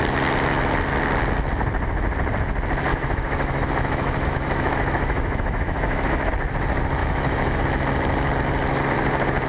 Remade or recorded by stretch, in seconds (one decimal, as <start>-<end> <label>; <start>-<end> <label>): 0.0-2.9 recorded; 2.9-6.3 remade; 6.3-7.0 recorded; 7.0-7.6 remade; 7.6-9.5 recorded